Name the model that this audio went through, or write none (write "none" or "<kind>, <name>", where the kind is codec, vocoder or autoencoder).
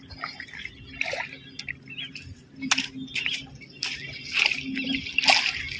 none